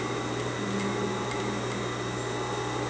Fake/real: real